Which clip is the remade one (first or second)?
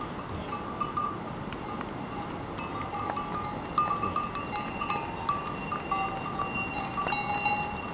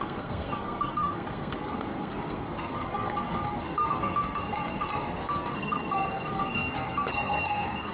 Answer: second